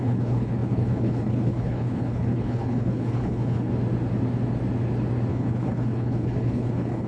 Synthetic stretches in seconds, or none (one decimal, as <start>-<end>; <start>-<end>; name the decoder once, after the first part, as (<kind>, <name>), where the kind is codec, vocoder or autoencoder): 0.0-3.7 (codec, HILCodec); 5.3-7.1